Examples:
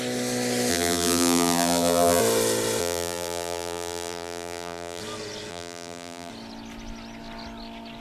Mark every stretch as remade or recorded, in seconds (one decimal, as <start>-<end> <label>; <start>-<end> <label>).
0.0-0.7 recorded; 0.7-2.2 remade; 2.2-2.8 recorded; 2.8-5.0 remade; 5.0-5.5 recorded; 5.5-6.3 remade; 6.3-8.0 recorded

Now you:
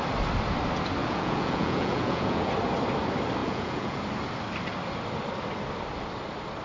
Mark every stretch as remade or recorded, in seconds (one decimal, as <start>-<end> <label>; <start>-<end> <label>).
0.0-1.0 recorded; 1.0-2.5 remade; 2.5-3.4 recorded; 3.4-4.0 remade; 4.0-6.6 recorded

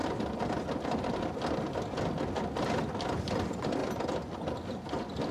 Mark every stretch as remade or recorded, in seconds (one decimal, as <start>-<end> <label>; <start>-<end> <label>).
0.0-5.3 recorded